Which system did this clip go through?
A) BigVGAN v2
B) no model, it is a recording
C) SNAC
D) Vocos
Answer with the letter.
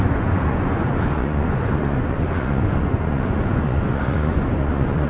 D